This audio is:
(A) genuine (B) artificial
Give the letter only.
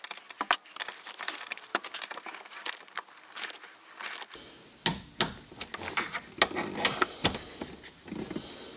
A